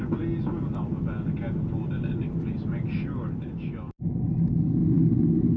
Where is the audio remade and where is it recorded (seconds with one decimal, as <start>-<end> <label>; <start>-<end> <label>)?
0.0-5.6 recorded